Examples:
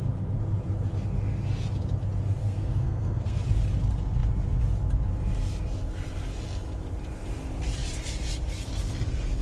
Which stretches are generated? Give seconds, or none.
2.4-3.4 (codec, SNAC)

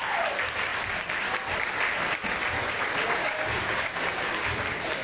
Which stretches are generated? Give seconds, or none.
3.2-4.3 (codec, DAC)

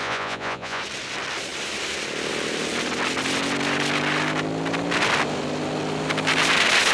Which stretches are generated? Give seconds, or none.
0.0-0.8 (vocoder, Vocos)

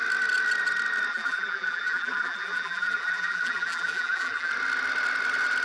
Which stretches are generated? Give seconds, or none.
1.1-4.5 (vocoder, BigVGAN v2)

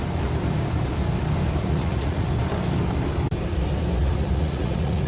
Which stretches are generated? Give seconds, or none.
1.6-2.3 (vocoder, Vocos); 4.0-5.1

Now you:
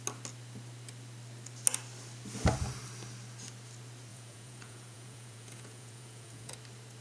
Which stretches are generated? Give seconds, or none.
4.1-6.5 (vocoder, Vocos)